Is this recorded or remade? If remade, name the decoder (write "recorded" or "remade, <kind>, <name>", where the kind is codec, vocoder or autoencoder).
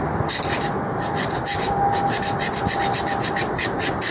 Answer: recorded